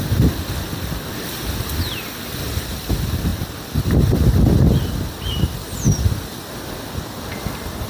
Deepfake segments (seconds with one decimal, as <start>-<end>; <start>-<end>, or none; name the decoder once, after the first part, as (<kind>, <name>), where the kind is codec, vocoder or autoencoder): none